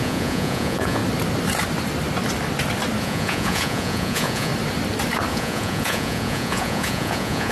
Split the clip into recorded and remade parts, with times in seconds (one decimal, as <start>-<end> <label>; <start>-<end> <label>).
0.0-1.0 remade; 1.0-3.0 recorded; 3.0-4.5 remade; 4.5-5.3 recorded; 5.3-7.5 remade